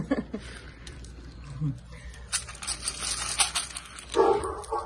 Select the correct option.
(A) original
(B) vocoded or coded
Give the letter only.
A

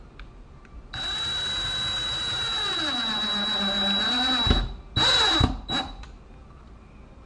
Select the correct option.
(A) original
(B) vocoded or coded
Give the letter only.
A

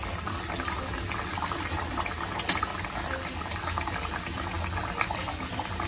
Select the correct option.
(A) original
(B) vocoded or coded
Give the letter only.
A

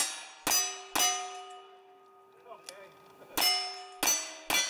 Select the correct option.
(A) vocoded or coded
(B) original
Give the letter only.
B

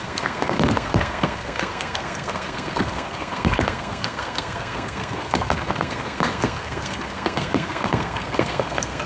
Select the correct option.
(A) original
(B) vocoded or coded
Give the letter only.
B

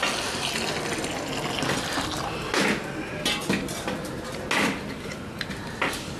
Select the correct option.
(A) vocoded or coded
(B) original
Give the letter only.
B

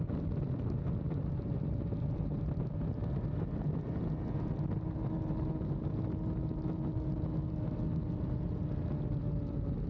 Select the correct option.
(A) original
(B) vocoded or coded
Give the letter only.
A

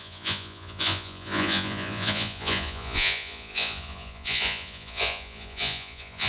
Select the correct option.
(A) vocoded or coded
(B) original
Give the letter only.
A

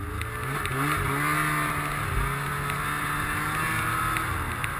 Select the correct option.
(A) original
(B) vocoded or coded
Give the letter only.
A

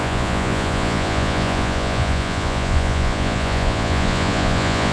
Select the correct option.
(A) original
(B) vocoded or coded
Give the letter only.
B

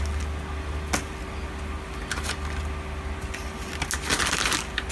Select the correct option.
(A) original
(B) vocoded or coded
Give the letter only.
A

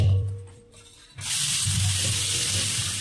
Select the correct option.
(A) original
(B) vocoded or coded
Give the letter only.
B